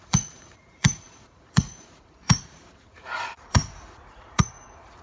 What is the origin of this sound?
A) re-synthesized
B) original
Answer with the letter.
A